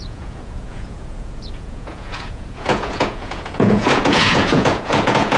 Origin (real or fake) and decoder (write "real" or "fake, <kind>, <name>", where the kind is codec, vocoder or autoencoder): fake, vocoder, Vocos